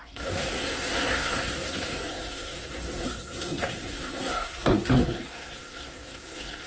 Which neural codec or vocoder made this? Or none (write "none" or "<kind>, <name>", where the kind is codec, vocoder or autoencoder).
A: codec, SNAC